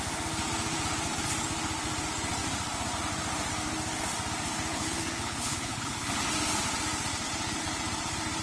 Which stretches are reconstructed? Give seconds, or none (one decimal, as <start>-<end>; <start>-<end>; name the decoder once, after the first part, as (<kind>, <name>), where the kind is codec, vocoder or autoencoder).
4.7-6.2 (codec, HILCodec)